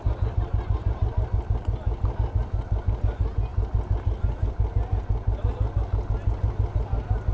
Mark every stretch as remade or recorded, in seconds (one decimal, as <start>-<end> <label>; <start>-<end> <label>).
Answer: 0.0-7.3 recorded